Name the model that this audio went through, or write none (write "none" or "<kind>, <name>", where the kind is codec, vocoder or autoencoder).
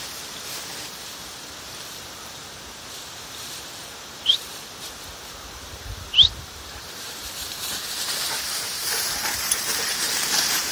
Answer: vocoder, BigVGAN v2